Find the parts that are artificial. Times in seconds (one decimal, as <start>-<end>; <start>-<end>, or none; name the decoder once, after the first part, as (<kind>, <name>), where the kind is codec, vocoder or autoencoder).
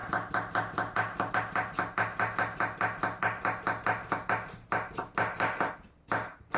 none